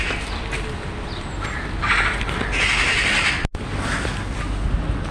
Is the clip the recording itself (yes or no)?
yes